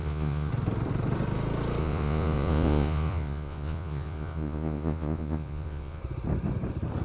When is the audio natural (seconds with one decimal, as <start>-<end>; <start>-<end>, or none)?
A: 0.5-1.8; 6.0-7.0